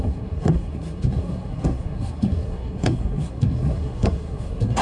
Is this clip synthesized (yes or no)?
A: yes